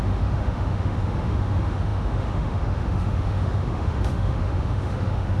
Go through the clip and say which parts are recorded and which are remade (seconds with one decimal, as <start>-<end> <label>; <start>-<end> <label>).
0.0-5.4 remade